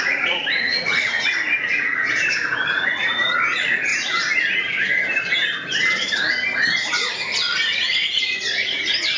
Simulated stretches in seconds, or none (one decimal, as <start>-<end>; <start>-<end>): 0.0-3.9; 7.1-9.2